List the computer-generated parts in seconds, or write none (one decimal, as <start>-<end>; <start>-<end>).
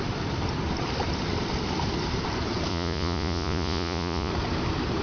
2.7-4.3